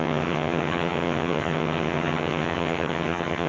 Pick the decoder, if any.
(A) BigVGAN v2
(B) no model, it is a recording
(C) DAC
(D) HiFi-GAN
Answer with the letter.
D